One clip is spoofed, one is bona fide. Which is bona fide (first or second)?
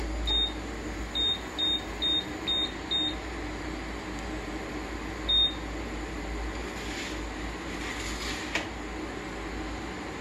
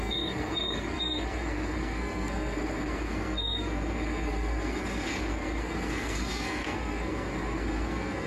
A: first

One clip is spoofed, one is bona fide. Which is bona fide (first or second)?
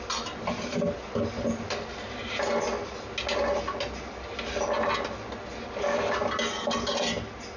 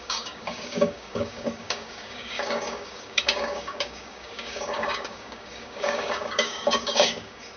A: first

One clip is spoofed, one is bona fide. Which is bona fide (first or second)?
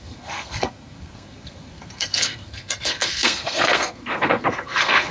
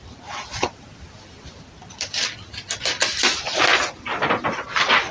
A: second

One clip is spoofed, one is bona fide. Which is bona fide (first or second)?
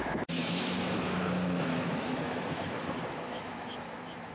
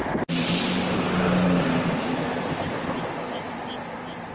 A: second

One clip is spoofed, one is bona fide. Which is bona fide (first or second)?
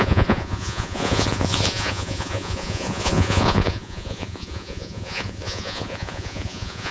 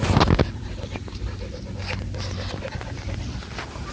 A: second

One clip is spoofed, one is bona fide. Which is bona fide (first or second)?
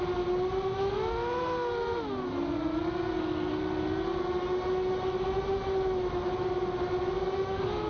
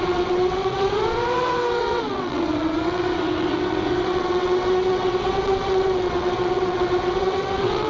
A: first